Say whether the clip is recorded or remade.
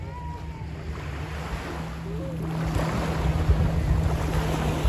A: recorded